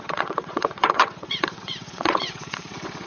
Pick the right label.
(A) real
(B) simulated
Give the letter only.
B